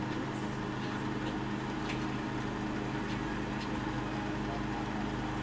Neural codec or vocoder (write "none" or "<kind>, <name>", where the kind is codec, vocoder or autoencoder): none